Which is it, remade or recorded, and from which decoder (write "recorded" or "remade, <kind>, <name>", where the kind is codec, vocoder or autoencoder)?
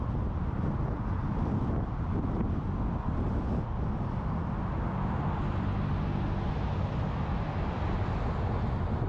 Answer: recorded